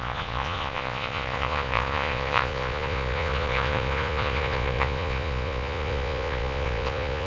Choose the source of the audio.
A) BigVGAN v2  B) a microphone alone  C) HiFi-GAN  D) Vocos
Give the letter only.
D